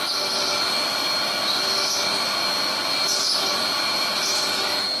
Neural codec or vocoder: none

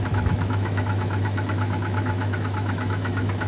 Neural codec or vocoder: autoencoder, DAC-VAE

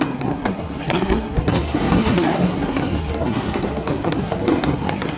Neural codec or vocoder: codec, SNAC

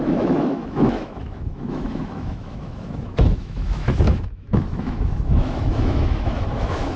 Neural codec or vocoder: autoencoder, DAC-VAE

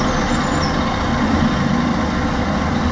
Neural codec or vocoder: none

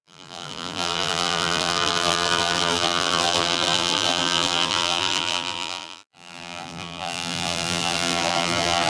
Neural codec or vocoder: vocoder, BigVGAN v2